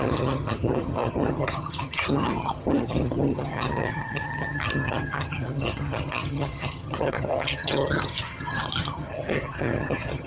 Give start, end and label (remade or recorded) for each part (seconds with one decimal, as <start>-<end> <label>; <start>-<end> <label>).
0.0-10.3 remade